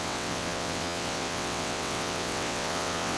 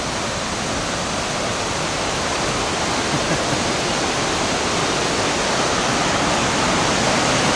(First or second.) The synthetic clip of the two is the first